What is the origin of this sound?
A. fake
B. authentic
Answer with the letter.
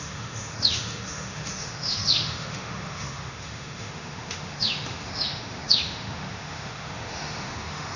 A